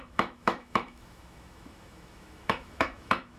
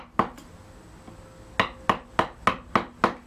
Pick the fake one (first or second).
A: first